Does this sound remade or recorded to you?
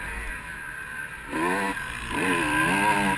recorded